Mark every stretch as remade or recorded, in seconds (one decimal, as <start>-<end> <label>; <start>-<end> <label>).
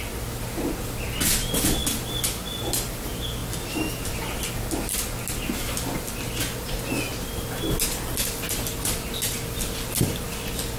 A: 0.0-10.8 recorded